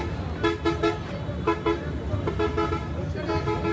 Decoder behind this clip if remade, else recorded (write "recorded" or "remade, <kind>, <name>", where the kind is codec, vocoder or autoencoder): recorded